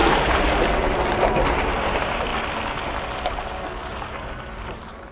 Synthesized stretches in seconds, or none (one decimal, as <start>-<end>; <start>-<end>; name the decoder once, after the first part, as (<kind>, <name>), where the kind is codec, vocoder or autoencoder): 1.1-2.3 (vocoder, BigVGAN v2); 4.6-5.1